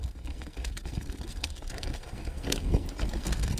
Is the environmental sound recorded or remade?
remade